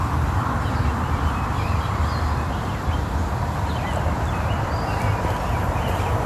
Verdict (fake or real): fake